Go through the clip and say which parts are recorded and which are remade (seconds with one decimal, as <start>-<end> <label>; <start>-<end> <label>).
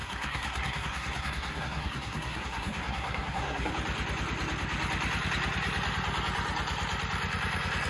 0.0-3.7 remade; 3.7-7.9 recorded